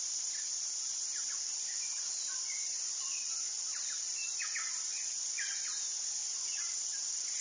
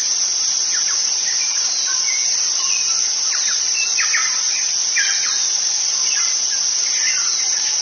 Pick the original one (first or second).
first